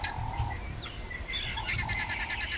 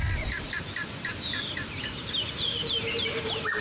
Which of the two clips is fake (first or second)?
second